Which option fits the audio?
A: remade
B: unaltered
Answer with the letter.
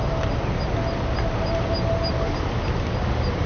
B